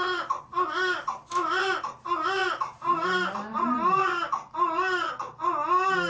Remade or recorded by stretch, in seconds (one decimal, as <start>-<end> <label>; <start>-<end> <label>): 0.0-2.4 recorded; 2.4-5.1 remade; 5.1-6.1 recorded